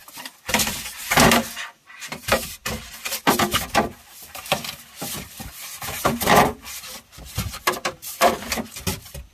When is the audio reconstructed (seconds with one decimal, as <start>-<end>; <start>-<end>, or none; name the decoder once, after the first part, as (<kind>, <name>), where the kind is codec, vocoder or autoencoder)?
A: 0.0-9.3 (vocoder, BigVGAN v2)